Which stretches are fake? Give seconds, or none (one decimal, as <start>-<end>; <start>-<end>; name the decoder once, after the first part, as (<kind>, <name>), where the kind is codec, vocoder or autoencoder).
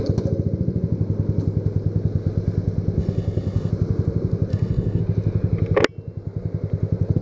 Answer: 3.0-3.7 (codec, SNAC); 4.5-5.0